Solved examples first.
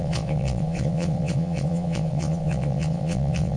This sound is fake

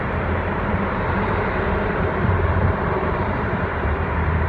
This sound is fake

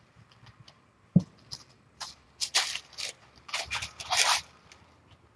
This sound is fake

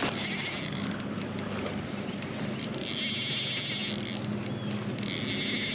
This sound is real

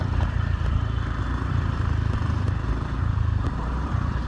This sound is fake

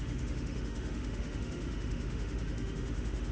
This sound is fake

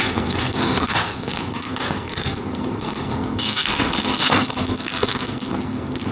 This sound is fake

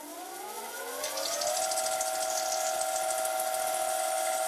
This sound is real